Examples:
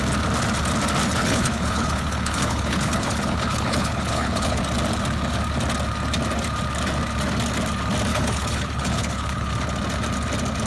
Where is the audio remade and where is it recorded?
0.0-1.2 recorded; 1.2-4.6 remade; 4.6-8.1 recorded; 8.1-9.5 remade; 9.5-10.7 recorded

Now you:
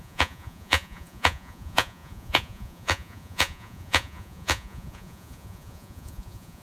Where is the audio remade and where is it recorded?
0.0-6.6 remade

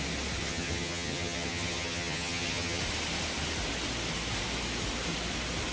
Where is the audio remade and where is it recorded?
0.0-0.4 recorded; 0.4-2.8 remade; 2.8-5.7 recorded

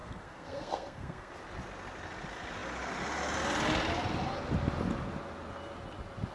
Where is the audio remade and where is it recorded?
0.0-1.3 remade; 1.3-6.3 recorded